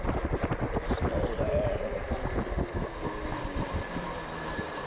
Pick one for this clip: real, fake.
real